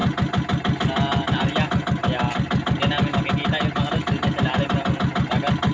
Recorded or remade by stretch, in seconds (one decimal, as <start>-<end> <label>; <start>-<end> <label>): 0.0-5.7 recorded